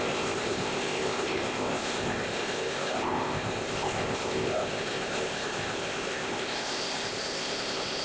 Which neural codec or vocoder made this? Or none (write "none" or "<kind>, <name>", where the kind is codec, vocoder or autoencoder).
codec, ZipCodec